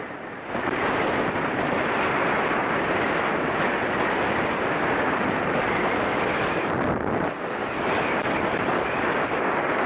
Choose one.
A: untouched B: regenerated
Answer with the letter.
A